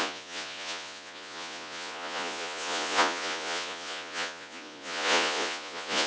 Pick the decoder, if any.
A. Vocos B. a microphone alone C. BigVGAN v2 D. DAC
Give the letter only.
A